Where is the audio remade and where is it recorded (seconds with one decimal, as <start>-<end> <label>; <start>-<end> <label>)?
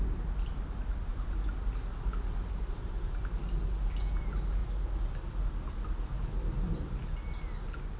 0.0-8.0 recorded